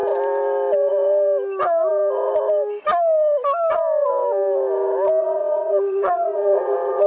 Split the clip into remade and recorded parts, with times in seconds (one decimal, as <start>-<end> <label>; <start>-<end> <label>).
0.0-5.2 recorded; 5.2-7.1 remade